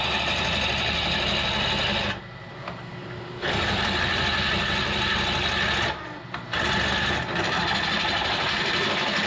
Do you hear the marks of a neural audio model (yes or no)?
no